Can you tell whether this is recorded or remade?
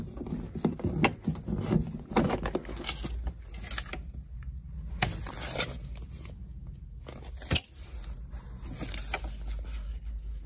recorded